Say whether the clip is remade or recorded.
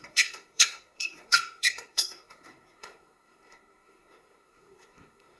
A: remade